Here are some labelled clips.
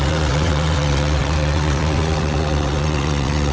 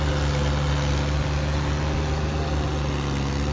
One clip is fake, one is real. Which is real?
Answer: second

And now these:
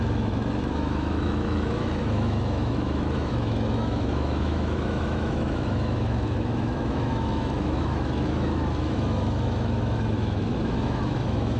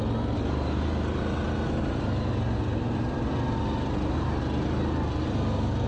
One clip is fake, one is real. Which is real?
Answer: second